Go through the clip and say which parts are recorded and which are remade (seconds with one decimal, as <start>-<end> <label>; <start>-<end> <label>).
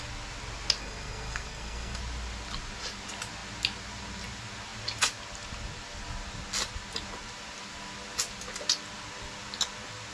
0.0-0.8 recorded; 0.8-2.0 remade; 2.0-10.1 recorded